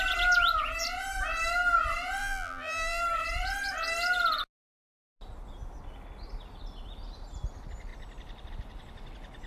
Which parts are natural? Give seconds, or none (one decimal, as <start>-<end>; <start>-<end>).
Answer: 0.0-2.2; 3.0-9.5